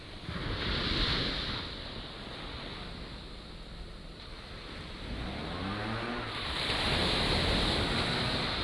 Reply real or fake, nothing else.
real